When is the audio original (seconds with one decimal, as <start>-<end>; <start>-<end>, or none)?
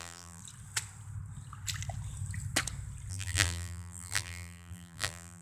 0.4-3.1